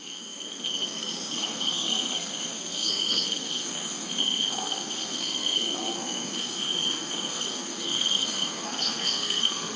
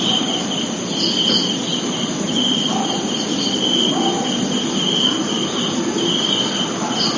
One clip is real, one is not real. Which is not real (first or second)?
first